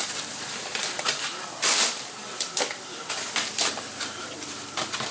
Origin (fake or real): fake